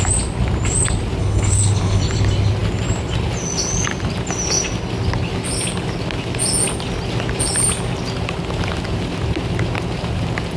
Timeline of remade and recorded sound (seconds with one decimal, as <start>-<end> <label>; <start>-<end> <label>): 0.0-1.2 recorded; 1.2-2.0 remade; 2.0-10.6 recorded